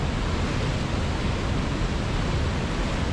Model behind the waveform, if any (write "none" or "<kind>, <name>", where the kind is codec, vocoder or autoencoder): none